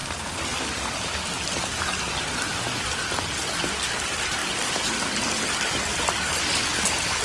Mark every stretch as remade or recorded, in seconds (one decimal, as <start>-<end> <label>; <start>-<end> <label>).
0.0-7.2 recorded